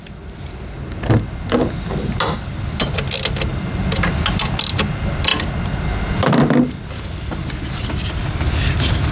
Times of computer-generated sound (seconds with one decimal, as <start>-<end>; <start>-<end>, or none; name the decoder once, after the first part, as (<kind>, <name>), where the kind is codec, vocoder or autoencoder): none